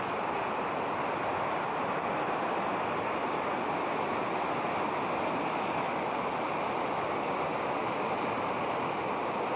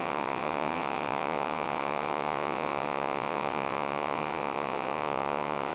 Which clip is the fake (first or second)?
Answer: second